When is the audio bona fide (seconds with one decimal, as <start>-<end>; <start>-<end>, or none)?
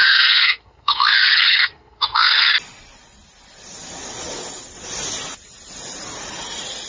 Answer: 2.5-6.9